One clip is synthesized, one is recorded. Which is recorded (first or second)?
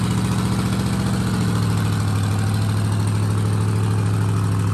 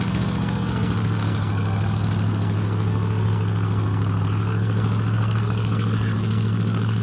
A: first